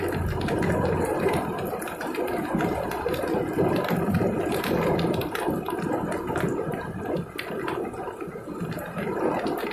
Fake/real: real